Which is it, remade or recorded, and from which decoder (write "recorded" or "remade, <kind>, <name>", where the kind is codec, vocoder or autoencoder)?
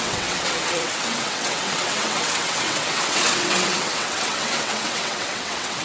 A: remade, vocoder, WaveNeXt